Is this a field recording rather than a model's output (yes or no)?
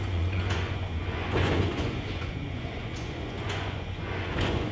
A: no